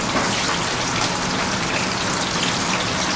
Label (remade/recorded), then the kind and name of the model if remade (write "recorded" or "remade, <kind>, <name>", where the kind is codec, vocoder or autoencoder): recorded